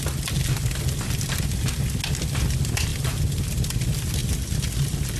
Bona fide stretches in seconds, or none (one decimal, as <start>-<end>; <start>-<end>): 0.0-4.2